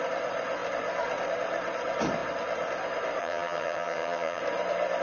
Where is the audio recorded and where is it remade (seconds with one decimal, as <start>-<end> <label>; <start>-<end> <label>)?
0.0-3.2 recorded; 3.2-4.4 remade; 4.4-5.0 recorded